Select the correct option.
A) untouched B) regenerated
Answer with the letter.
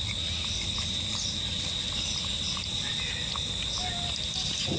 A